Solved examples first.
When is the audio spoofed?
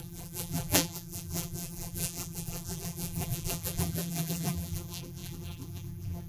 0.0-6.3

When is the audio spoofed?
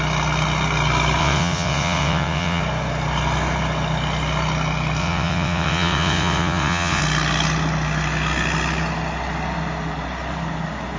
1.2-2.6; 5.0-7.0